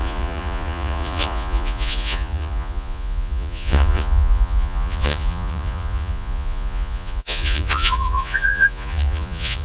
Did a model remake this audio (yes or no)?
yes